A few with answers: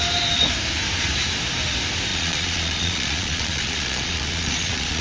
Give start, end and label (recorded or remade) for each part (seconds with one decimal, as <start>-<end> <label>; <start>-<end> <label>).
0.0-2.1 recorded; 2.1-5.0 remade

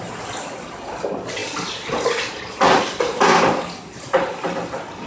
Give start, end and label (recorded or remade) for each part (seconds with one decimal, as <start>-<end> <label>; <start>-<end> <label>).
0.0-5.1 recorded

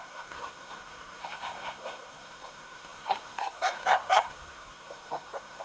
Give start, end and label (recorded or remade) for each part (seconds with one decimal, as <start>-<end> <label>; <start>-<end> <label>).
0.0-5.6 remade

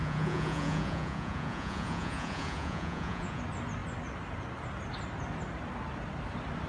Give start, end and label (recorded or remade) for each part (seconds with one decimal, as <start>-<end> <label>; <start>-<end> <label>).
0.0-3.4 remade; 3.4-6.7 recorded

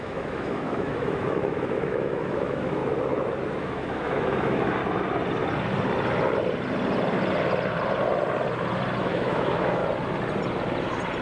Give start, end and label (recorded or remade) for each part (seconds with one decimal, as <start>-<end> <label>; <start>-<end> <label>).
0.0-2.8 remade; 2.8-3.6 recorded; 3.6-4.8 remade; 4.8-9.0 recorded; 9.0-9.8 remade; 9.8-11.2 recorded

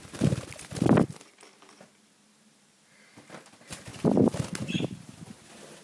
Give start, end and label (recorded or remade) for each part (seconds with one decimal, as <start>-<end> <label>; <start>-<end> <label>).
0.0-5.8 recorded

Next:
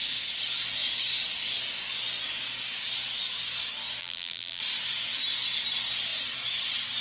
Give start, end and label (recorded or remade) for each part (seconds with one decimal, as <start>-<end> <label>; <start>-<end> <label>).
0.0-4.0 recorded; 4.0-4.6 remade; 4.6-7.0 recorded